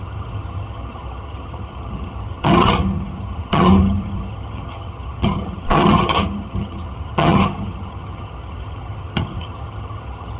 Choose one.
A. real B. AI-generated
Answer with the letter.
B